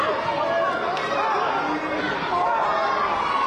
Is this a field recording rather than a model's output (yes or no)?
yes